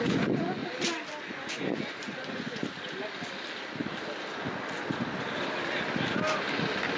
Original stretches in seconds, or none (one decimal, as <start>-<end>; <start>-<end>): 0.6-1.2; 2.6-7.0